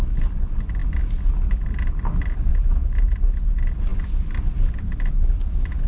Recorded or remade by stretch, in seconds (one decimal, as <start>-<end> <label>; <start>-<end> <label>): 0.0-2.5 recorded; 2.5-3.2 remade; 3.2-5.9 recorded